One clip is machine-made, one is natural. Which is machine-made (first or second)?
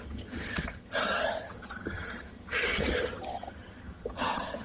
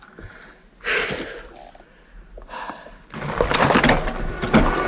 first